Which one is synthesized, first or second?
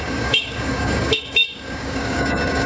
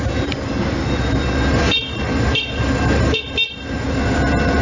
first